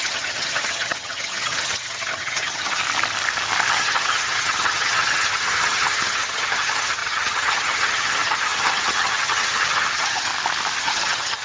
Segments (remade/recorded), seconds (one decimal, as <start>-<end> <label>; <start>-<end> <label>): 0.0-2.8 remade; 2.8-3.7 recorded; 3.7-10.3 remade; 10.3-10.8 recorded; 10.8-11.4 remade